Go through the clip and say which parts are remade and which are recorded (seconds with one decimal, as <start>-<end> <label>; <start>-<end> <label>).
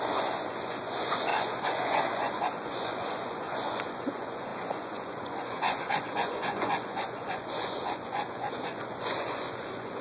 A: 0.0-10.0 remade